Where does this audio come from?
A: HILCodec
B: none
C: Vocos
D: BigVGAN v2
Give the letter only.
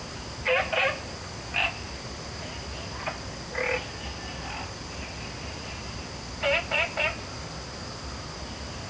B